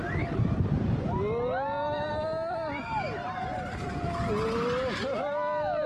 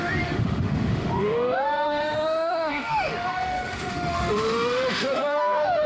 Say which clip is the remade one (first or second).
second